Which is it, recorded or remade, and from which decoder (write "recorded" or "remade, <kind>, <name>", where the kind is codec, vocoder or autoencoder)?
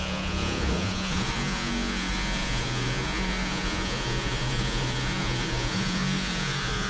remade, vocoder, Vocos